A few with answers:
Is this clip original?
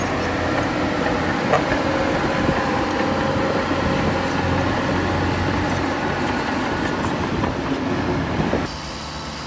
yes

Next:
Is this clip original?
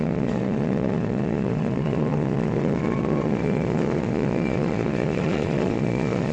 no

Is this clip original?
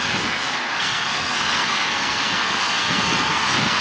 no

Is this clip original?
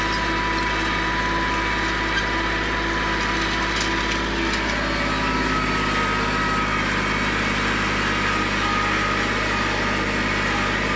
yes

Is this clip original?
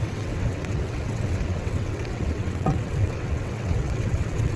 no